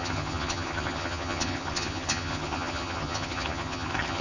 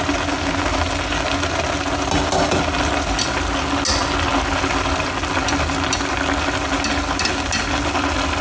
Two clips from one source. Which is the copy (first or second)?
first